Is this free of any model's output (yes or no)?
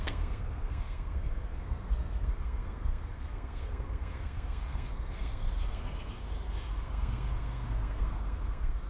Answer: no